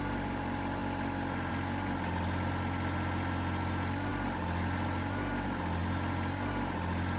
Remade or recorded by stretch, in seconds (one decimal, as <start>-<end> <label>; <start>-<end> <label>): 0.0-7.2 recorded